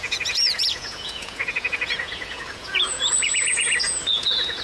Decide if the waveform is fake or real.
fake